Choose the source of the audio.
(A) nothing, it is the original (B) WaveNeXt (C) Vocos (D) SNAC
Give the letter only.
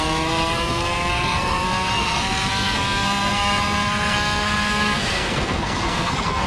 D